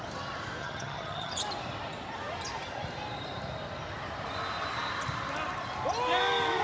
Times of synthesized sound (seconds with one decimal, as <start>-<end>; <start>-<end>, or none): 0.6-1.3

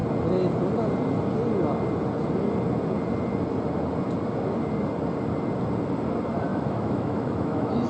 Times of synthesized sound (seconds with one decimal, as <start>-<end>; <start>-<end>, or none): 6.5-7.9

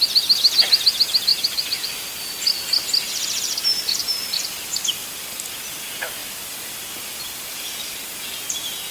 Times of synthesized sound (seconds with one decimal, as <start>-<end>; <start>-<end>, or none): 1.3-1.8

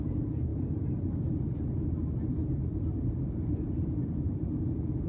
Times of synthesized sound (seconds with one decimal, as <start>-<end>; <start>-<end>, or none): none

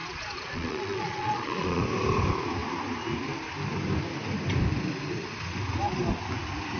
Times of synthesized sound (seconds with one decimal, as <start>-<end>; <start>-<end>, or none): 0.0-1.8

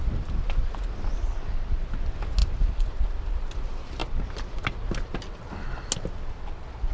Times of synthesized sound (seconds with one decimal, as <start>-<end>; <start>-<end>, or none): 2.4-3.2

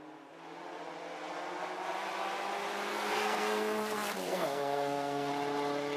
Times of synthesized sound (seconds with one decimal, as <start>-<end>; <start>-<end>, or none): 2.9-5.3